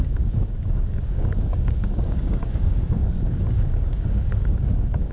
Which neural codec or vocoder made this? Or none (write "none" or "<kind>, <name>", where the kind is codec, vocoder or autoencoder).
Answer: codec, DAC